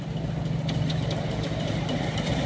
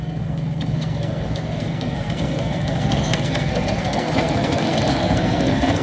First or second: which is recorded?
first